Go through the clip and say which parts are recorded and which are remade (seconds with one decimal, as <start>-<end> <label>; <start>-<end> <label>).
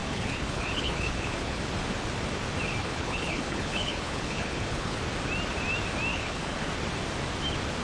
0.0-1.6 remade; 1.6-2.8 recorded; 2.8-5.0 remade; 5.0-6.1 recorded; 6.1-6.7 remade; 6.7-7.8 recorded